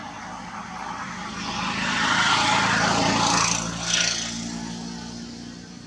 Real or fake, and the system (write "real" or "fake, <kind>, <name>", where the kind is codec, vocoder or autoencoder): real